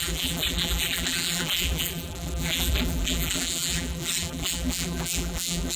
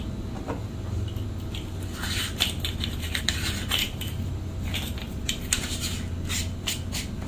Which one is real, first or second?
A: second